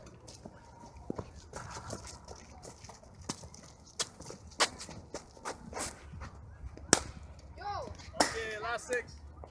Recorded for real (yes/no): yes